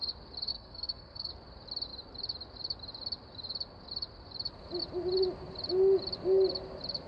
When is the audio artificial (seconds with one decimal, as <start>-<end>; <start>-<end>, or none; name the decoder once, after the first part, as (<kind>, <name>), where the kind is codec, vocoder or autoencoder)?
0.5-1.3 (codec, SNAC)